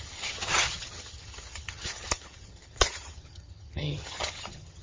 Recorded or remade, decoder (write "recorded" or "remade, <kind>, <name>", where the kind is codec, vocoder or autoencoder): remade, vocoder, HiFi-GAN